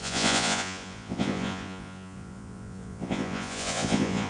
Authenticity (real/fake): fake